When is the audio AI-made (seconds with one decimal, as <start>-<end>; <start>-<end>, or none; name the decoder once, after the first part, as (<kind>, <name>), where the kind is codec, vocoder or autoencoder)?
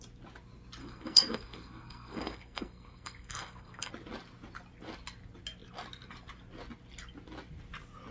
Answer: 0.8-3.9 (codec, SNAC)